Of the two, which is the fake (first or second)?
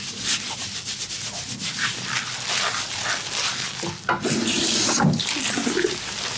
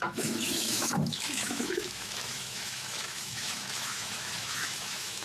second